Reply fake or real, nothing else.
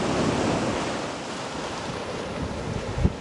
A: real